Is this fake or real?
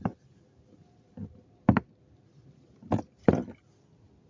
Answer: real